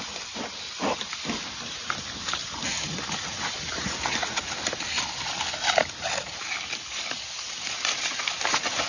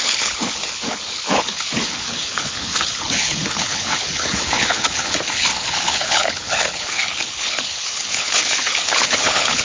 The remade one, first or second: second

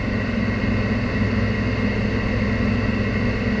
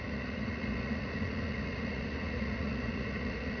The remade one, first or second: second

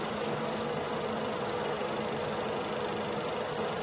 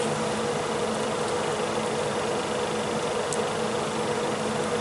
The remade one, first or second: first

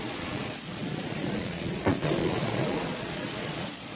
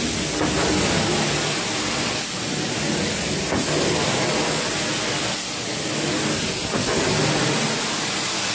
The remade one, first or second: first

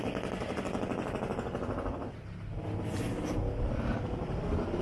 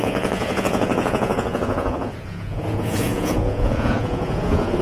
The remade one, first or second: second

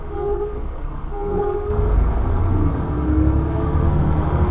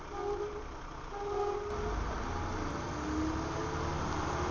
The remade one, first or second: first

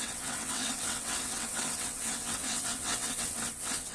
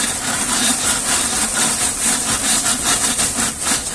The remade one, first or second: first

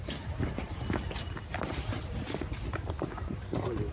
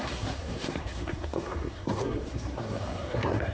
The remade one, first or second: second